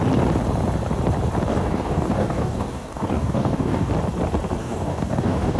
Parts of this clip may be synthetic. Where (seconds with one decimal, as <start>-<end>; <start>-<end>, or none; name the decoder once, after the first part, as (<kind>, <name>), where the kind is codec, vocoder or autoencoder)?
1.5-3.9 (codec, DAC); 4.6-5.6